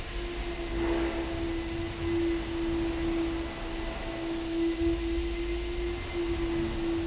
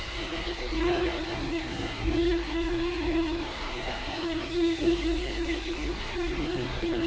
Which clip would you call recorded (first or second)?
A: first